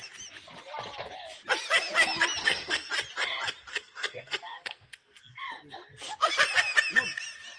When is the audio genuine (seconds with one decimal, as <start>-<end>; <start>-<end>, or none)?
0.0-2.4; 2.9-3.7; 5.4-7.6